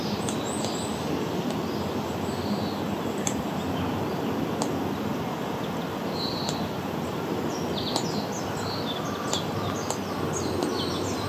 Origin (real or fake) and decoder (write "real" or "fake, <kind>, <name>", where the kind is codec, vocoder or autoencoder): real